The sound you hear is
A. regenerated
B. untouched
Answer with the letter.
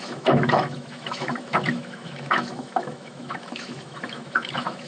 A